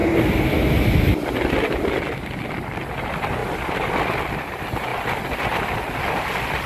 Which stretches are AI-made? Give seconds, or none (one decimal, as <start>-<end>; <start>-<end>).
none